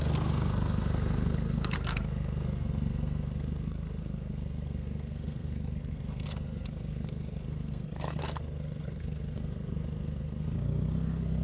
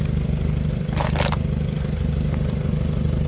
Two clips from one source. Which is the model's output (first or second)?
first